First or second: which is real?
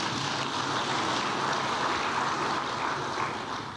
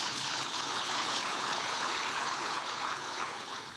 first